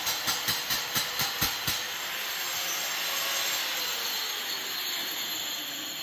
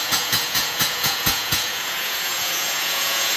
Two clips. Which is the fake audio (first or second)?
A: second